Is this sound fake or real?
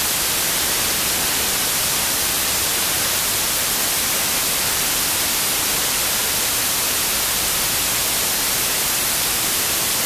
real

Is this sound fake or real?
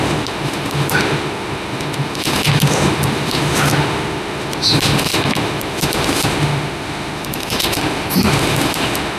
fake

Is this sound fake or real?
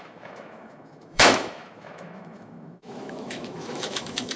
fake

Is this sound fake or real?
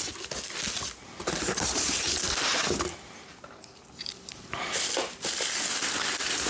real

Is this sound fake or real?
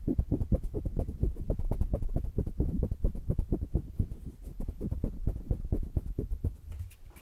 real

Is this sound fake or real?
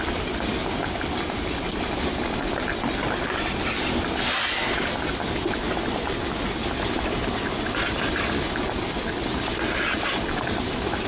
real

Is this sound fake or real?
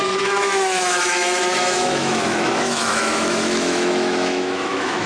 fake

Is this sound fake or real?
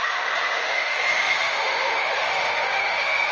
fake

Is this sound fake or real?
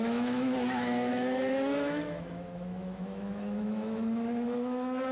fake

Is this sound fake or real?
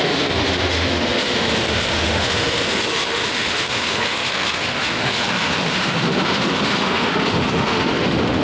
fake